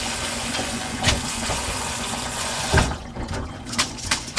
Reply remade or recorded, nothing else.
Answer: remade